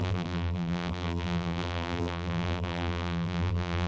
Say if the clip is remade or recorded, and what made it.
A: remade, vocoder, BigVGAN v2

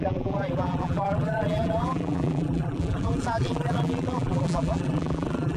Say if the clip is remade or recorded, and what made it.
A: remade, vocoder, BigVGAN v2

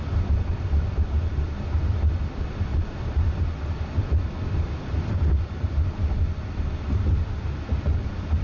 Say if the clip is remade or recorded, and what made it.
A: remade, vocoder, BigVGAN v2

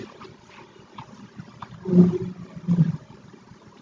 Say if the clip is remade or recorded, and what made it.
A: remade, vocoder, BigVGAN v2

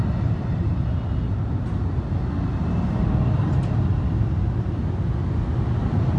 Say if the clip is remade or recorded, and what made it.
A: recorded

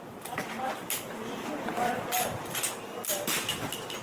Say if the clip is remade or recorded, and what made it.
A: recorded